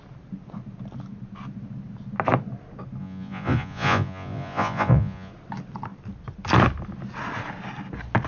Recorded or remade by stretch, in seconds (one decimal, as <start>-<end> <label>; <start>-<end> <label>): 0.0-3.0 recorded; 3.0-5.3 remade; 5.3-8.3 recorded